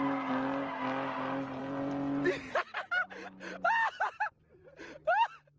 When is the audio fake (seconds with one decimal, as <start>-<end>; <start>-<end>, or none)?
none